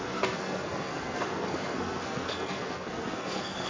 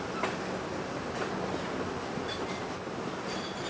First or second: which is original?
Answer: second